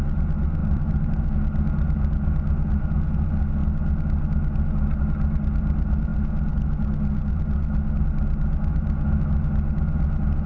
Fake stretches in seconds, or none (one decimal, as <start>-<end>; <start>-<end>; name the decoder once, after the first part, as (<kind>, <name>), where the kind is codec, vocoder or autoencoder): 0.6-1.3 (vocoder, BigVGAN v2)